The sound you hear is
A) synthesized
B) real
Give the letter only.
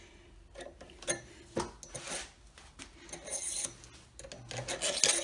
B